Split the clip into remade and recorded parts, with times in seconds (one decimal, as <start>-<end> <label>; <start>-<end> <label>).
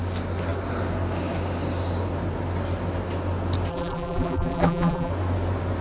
0.0-3.7 recorded; 3.7-5.1 remade; 5.1-5.8 recorded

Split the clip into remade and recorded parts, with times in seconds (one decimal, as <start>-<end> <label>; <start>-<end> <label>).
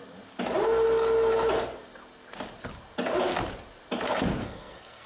0.0-4.4 recorded; 4.4-5.1 remade